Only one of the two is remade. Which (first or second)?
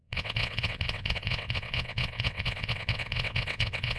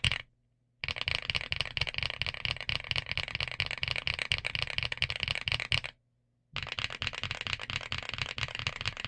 first